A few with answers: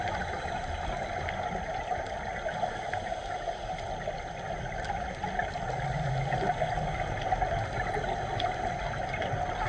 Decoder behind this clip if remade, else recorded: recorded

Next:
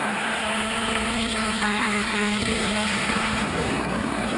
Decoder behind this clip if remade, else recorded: remade, codec, SNAC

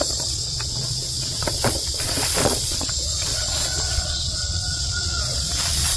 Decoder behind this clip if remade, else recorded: remade, vocoder, Vocos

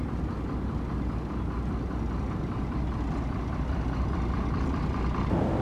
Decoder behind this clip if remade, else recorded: recorded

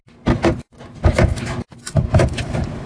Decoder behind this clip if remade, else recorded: recorded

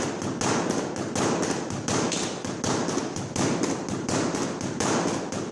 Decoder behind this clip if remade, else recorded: recorded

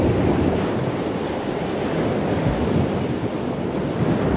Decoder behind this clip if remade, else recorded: recorded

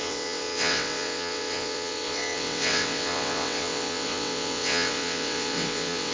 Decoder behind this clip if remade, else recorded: remade, vocoder, WaveNeXt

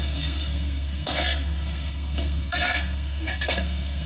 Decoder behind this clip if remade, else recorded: remade, codec, SNAC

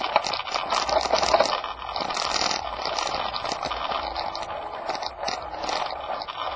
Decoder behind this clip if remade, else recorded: recorded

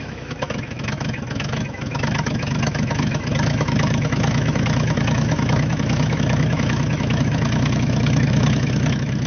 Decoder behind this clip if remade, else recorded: remade, autoencoder, DAC-VAE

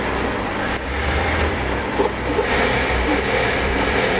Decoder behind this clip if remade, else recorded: remade, vocoder, BigVGAN v2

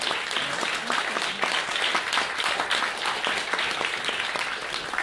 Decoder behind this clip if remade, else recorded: recorded